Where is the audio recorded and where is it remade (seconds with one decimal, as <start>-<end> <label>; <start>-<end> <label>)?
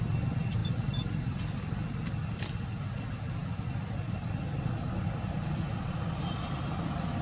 0.0-7.2 recorded